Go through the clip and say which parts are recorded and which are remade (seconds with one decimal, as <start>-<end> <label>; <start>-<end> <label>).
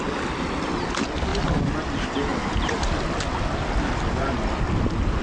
0.0-5.2 recorded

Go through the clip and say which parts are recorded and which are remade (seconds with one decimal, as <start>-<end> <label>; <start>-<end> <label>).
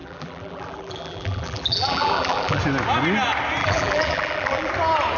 0.0-2.6 remade; 2.6-3.6 recorded; 3.6-4.7 remade; 4.7-5.2 recorded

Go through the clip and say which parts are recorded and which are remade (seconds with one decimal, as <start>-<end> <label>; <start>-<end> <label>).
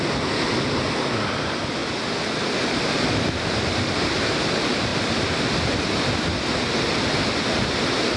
0.0-4.9 recorded; 4.9-5.8 remade; 5.8-8.2 recorded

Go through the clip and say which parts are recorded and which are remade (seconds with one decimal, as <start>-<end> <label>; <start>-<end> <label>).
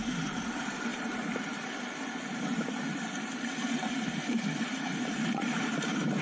0.0-6.2 remade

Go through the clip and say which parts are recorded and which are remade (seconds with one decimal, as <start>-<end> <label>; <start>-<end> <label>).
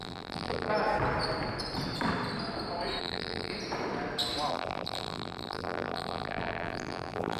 0.0-0.7 remade; 0.7-3.0 recorded; 3.0-3.5 remade; 3.5-4.5 recorded; 4.5-7.4 remade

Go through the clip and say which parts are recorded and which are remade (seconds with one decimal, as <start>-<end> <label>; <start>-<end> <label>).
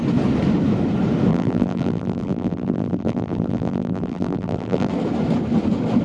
0.0-1.3 recorded; 1.3-4.9 remade; 4.9-6.0 recorded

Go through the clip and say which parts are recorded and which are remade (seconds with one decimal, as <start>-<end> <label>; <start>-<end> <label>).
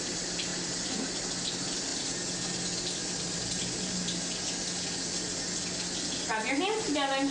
0.0-0.5 recorded; 0.5-1.1 remade; 1.1-7.3 recorded